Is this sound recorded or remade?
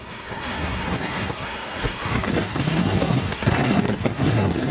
remade